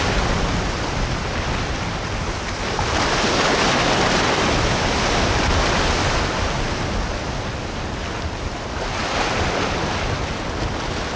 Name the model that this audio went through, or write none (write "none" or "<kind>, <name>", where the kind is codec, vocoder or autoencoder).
none